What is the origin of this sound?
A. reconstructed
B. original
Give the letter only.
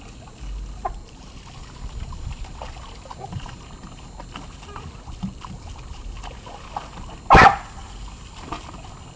B